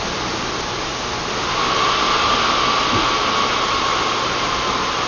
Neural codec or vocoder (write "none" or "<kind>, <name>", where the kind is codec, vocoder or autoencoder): none